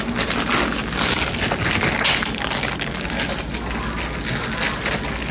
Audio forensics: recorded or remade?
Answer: recorded